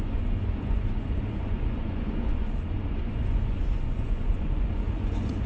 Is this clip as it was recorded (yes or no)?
no